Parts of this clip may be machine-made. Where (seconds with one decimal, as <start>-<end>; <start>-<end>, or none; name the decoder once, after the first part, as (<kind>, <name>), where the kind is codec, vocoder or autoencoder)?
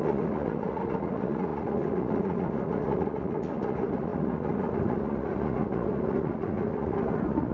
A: 0.0-7.5 (vocoder, Vocos)